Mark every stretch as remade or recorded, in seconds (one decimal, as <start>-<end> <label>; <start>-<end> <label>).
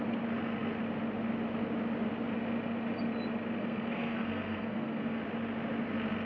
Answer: 0.0-3.6 recorded; 3.6-5.2 remade; 5.2-6.3 recorded